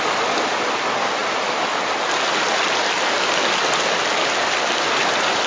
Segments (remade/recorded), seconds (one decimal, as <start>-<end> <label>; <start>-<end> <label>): 0.0-5.5 recorded